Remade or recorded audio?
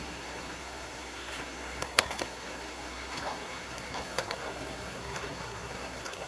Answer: remade